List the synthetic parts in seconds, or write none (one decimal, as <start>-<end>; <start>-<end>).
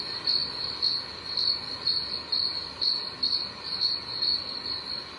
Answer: none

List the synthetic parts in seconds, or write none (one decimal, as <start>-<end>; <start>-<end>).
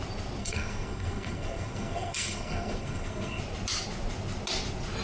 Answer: 0.4-3.4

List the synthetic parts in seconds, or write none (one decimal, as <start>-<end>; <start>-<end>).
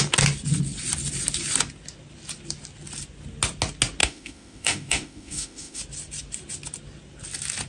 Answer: 4.0-5.8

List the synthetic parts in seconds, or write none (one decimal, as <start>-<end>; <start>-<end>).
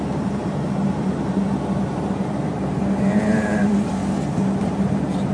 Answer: 0.0-4.0; 4.6-5.3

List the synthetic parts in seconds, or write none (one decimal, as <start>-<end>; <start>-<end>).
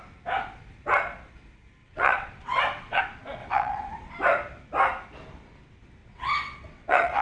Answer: 1.8-3.0; 3.4-4.1; 6.0-7.2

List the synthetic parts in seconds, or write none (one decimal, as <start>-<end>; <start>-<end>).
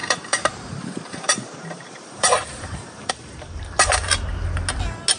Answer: 0.0-3.1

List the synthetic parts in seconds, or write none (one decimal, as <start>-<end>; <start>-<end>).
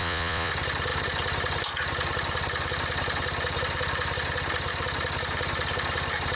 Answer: 0.0-0.5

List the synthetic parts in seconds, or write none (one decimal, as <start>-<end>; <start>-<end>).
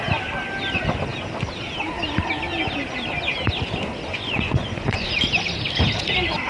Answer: 4.1-5.1